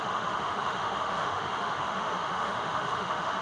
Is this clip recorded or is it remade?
remade